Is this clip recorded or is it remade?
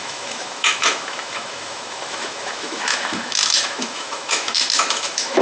remade